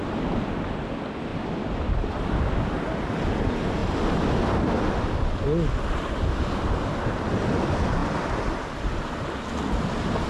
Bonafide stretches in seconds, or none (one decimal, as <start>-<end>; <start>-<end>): 0.0-10.3